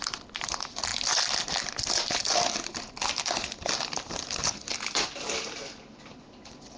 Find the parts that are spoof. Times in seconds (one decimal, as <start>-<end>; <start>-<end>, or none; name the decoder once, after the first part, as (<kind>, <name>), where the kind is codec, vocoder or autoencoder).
none